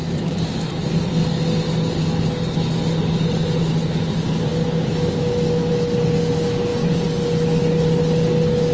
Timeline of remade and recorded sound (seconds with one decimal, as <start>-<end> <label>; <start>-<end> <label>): 0.0-8.7 recorded